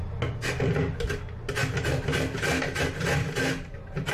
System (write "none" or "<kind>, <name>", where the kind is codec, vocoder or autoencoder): none